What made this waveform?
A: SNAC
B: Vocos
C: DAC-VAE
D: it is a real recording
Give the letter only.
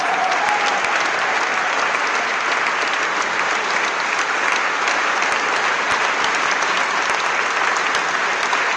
D